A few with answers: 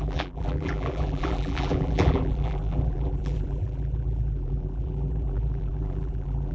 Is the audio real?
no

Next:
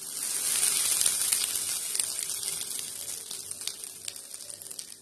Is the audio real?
yes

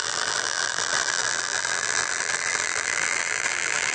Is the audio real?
no